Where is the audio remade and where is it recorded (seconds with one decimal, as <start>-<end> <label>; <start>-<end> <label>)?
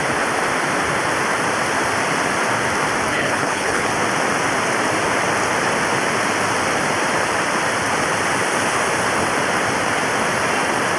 0.0-3.1 recorded; 3.1-3.9 remade; 3.9-11.0 recorded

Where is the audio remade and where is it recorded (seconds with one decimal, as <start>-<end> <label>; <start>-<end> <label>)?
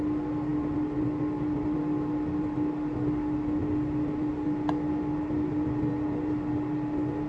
0.0-7.3 recorded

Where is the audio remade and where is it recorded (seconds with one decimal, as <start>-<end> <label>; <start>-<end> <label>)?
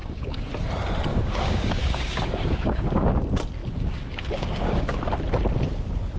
0.0-0.5 remade; 0.5-1.1 recorded; 1.1-3.1 remade; 3.1-3.6 recorded; 3.6-5.0 remade; 5.0-6.2 recorded